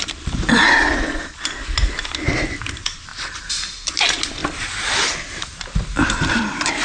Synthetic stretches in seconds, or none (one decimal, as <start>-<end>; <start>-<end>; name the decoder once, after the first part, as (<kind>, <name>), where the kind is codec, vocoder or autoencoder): none